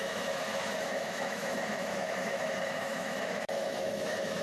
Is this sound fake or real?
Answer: fake